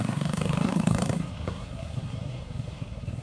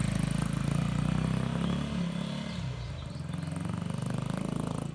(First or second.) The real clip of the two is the second